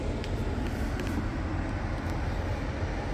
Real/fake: real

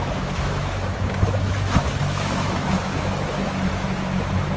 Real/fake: fake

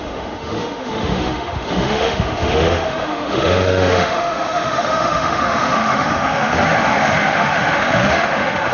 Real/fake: fake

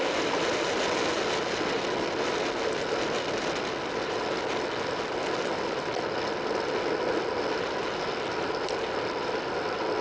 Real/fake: real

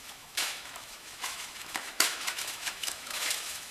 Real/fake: fake